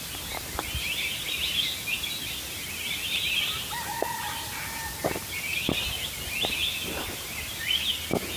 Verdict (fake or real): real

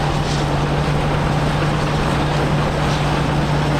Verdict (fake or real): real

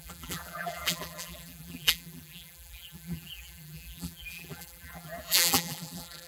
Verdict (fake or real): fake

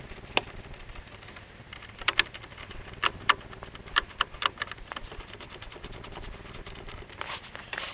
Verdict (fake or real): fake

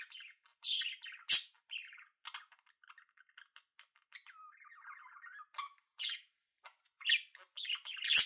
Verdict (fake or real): real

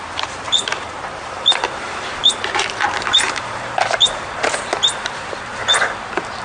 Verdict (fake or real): fake